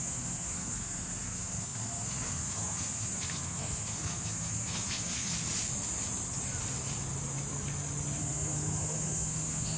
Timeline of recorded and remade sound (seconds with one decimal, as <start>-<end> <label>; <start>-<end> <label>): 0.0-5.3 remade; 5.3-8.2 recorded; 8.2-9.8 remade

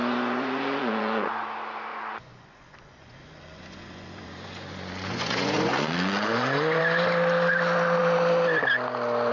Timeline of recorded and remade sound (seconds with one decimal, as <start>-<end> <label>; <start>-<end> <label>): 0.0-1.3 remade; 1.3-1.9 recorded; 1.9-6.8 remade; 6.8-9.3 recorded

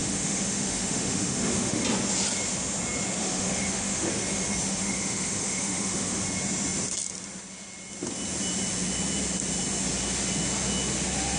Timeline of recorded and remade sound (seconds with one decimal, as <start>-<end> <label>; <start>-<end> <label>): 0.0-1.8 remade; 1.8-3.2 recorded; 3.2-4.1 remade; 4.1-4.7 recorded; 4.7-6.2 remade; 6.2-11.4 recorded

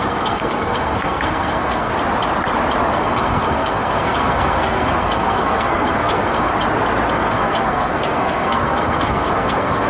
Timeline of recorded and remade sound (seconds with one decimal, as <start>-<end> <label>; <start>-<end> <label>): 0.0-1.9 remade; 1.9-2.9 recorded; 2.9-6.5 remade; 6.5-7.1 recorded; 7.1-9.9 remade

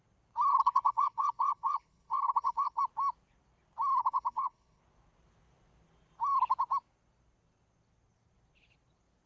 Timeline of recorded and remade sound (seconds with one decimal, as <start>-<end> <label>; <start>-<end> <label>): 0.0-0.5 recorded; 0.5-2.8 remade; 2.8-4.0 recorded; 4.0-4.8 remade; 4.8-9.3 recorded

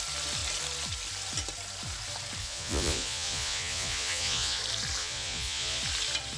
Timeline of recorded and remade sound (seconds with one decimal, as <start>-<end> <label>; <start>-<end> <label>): 0.0-2.4 recorded; 2.4-4.6 remade; 4.6-5.0 recorded; 5.0-5.8 remade; 5.8-6.4 recorded

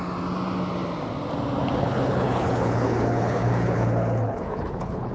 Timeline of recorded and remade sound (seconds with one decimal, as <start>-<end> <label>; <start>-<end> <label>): 0.0-1.9 recorded; 1.9-5.1 remade